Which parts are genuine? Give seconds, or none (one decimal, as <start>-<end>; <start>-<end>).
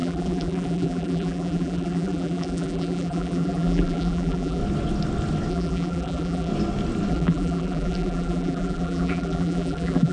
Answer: 4.6-5.5; 6.5-7.1